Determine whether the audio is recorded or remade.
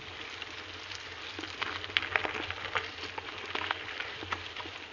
recorded